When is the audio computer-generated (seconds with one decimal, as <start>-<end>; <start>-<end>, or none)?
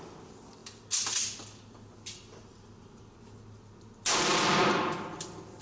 none